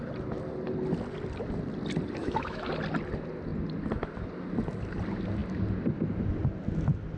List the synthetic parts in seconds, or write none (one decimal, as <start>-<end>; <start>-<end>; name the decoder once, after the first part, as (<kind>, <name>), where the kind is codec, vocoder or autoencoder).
2.2-2.7 (autoencoder, DAC-VAE)